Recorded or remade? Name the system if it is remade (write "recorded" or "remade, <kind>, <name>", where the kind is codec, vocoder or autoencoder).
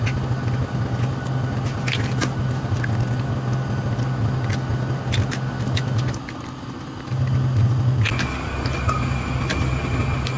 recorded